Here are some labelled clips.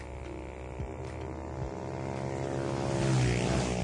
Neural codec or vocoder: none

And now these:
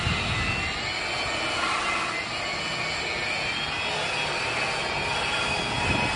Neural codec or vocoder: none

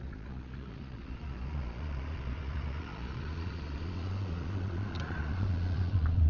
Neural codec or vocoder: vocoder, Vocos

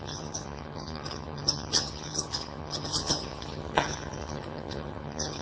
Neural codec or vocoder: vocoder, HiFi-GAN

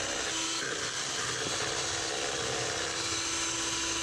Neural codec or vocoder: none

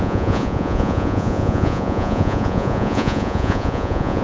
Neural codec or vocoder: vocoder, Vocos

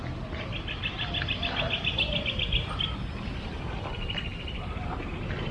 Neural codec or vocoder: none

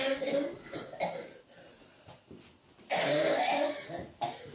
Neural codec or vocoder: none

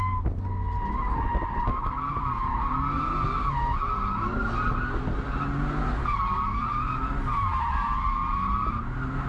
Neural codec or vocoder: none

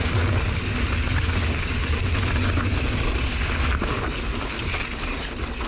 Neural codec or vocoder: none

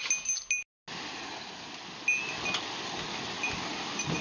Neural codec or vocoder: none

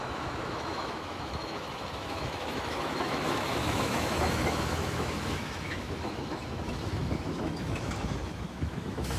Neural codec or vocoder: autoencoder, DAC-VAE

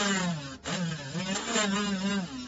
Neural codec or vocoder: none